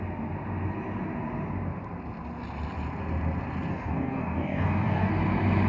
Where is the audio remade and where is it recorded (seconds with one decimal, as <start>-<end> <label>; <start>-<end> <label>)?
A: 0.0-3.7 recorded; 3.7-5.1 remade; 5.1-5.7 recorded